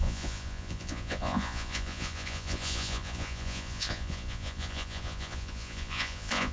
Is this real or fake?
fake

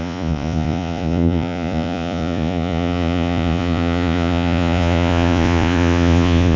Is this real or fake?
fake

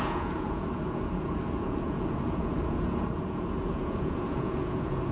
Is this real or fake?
fake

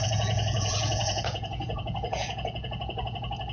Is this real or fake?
fake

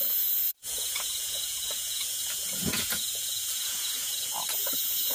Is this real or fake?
fake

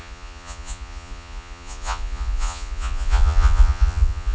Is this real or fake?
fake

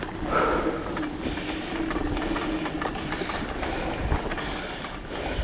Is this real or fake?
real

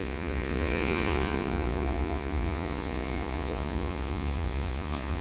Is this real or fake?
fake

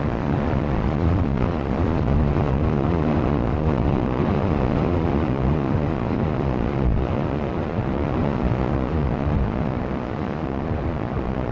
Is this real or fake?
fake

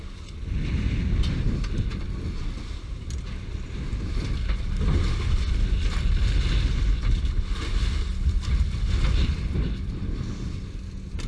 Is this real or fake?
real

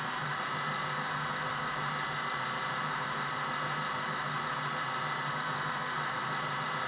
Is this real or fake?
real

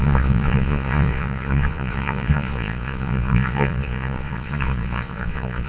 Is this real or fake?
fake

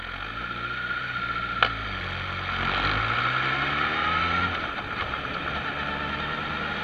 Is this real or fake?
real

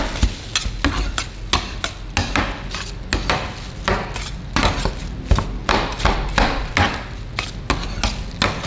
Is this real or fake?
real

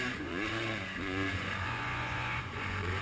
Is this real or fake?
fake